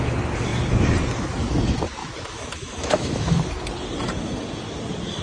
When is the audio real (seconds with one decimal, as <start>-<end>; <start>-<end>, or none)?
0.0-2.0; 3.5-5.2